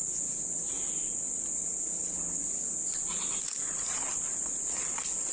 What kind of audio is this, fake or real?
fake